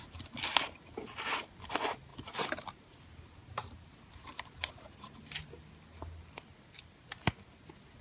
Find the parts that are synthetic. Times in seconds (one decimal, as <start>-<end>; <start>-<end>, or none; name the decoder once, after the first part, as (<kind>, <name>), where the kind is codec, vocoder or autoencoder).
2.1-2.9 (vocoder, BigVGAN v2); 3.4-5.5